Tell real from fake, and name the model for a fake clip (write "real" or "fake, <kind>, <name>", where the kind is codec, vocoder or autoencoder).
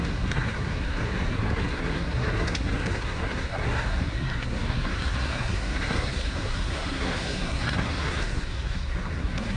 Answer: fake, codec, SNAC